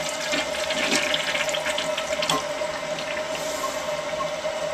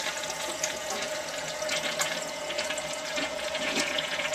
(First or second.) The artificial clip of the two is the second